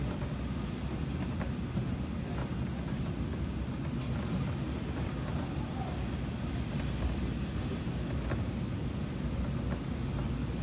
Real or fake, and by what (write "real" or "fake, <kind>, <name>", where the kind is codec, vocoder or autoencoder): real